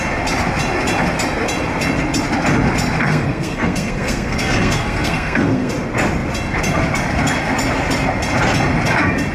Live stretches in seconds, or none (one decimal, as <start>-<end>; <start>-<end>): 0.0-3.0; 5.7-9.3

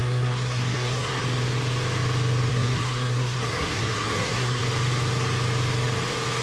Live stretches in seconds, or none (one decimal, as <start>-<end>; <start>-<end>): 1.2-2.5; 4.6-6.4